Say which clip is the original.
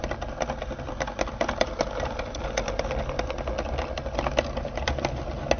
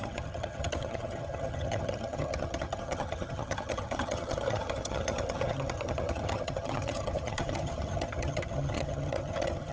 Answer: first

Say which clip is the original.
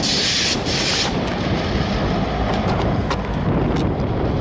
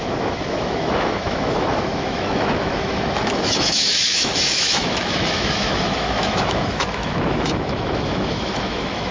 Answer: first